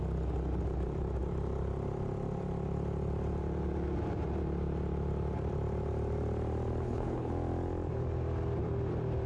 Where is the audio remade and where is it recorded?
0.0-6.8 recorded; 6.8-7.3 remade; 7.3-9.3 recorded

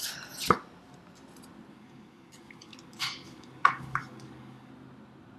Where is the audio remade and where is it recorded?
0.0-1.7 recorded; 1.7-4.7 remade; 4.7-5.4 recorded

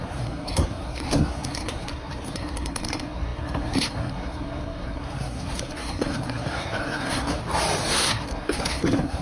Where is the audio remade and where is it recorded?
0.0-7.4 remade; 7.4-7.9 recorded; 7.9-9.2 remade

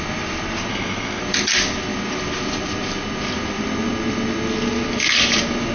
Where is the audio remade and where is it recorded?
0.0-0.7 recorded; 0.7-1.2 remade; 1.2-5.7 recorded

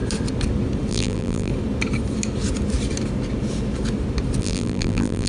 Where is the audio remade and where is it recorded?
0.0-0.9 recorded; 0.9-1.5 remade; 1.5-4.4 recorded; 4.4-5.3 remade

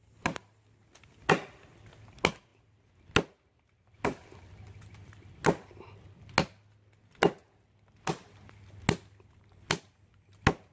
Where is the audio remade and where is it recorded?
0.0-10.7 recorded

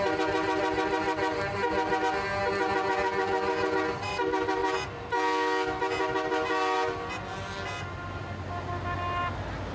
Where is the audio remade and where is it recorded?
0.0-9.7 recorded